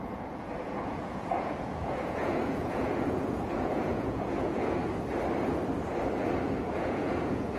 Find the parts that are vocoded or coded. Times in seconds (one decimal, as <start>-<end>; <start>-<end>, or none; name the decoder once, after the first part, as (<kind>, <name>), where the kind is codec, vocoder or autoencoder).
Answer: 0.0-4.8 (vocoder, Vocos); 6.6-7.6